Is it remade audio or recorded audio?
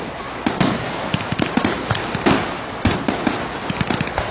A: recorded